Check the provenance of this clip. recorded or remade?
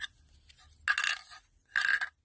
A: recorded